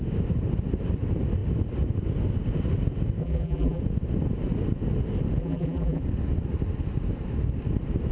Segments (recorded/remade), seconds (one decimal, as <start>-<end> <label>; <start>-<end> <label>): 0.0-3.2 recorded; 3.2-3.8 remade; 3.8-5.4 recorded; 5.4-6.0 remade; 6.0-8.1 recorded